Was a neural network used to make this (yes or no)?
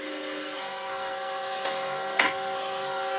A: yes